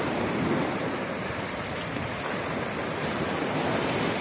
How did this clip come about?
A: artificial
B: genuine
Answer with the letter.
B